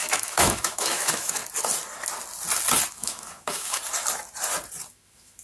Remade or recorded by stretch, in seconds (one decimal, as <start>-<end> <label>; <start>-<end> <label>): 0.0-1.4 remade; 1.4-2.9 recorded; 2.9-3.8 remade; 3.8-4.9 recorded; 4.9-5.4 remade